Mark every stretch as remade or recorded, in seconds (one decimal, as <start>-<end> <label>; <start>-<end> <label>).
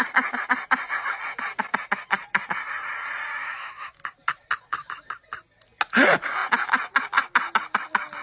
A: 0.0-3.4 recorded; 3.4-4.0 remade; 4.0-8.2 recorded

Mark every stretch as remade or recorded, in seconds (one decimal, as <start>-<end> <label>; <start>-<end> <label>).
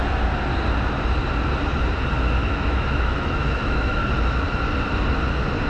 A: 0.0-2.4 recorded; 2.4-4.0 remade; 4.0-5.7 recorded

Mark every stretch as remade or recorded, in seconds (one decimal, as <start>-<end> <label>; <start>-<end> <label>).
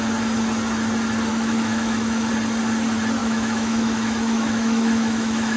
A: 0.0-1.3 recorded; 1.3-2.3 remade; 2.3-3.2 recorded; 3.2-5.6 remade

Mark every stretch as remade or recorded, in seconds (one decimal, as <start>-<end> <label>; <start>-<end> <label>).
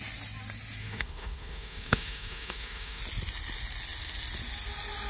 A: 0.0-0.8 recorded; 0.8-3.0 remade; 3.0-5.1 recorded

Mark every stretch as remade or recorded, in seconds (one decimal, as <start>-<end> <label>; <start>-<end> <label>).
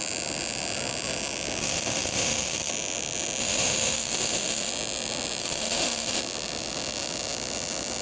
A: 0.0-1.6 recorded; 1.6-2.7 remade; 2.7-3.4 recorded; 3.4-4.7 remade; 4.7-5.4 recorded; 5.4-6.2 remade; 6.2-8.0 recorded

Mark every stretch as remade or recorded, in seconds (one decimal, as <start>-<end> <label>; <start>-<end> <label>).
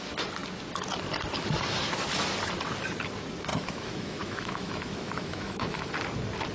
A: 0.0-3.5 recorded; 3.5-5.9 remade; 5.9-6.5 recorded